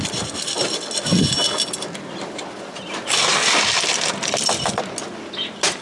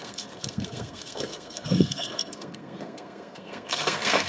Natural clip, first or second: first